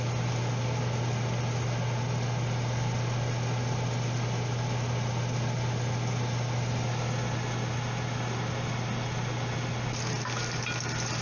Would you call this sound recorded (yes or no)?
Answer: yes